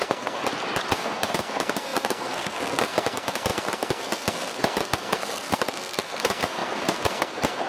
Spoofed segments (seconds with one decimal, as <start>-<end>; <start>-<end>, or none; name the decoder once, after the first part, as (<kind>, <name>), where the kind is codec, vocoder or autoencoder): 0.0-0.4 (codec, SNAC); 0.9-7.7